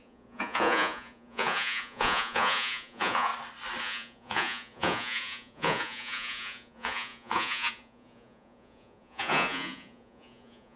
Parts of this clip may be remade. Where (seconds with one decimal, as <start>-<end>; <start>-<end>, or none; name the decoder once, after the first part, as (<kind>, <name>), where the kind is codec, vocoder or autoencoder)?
0.0-3.3 (vocoder, Vocos); 3.8-10.8